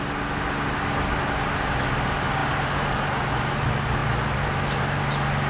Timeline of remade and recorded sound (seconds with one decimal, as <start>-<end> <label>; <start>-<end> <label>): 0.0-5.5 recorded